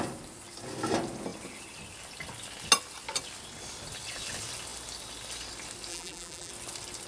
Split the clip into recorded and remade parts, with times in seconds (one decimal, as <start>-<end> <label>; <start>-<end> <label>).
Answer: 0.0-5.9 recorded; 5.9-6.5 remade; 6.5-7.1 recorded